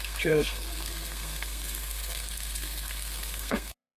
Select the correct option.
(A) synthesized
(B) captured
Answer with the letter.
A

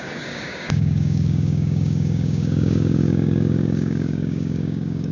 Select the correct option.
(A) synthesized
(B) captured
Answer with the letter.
A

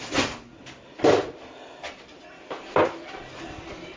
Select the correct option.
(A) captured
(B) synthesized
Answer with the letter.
A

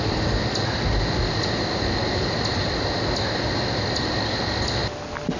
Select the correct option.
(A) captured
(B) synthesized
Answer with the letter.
A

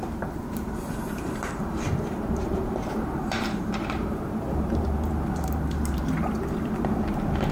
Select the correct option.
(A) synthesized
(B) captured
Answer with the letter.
A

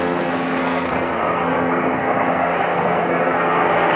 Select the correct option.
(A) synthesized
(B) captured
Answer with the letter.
A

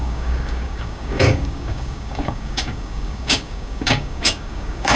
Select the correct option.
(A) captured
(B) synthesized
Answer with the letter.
B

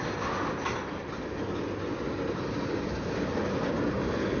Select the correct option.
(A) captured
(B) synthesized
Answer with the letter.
A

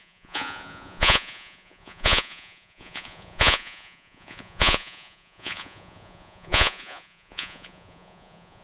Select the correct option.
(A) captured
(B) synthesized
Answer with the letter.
B